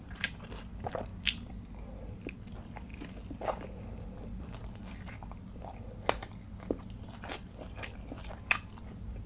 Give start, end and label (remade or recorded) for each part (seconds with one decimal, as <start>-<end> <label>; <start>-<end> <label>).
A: 0.0-9.3 recorded